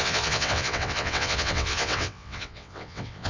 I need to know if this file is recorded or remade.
remade